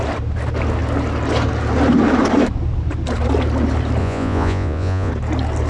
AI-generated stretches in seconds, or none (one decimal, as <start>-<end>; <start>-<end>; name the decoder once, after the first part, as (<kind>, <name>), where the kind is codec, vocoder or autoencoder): 4.0-5.1 (vocoder, Vocos)